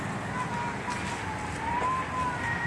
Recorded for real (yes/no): yes